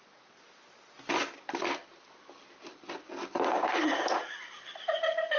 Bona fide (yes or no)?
yes